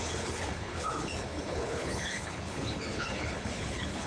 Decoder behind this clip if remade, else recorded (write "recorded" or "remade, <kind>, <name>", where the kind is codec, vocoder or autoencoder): remade, codec, HILCodec